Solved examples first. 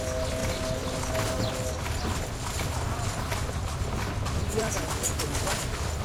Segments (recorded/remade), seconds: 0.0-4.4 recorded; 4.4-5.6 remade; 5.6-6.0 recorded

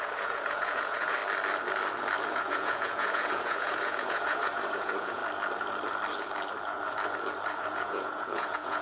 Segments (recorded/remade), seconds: 0.0-1.2 remade; 1.2-2.3 recorded; 2.3-5.2 remade; 5.2-7.6 recorded; 7.6-8.8 remade